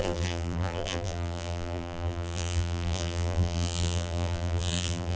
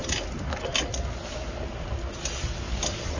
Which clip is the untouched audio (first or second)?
second